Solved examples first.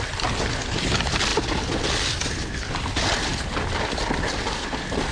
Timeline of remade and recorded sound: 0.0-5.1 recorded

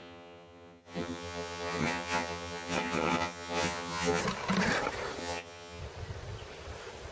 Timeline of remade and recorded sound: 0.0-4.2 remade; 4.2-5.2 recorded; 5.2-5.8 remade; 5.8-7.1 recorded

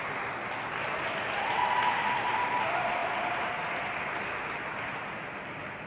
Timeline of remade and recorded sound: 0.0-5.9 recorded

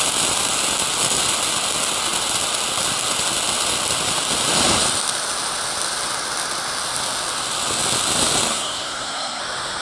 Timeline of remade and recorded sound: 0.0-8.5 recorded; 8.5-9.4 remade; 9.4-9.8 recorded

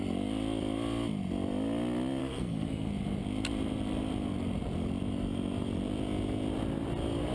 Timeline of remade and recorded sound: 0.0-2.2 recorded; 2.2-2.9 remade; 2.9-7.3 recorded